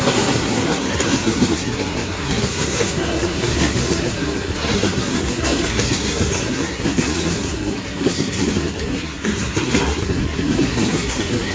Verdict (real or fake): fake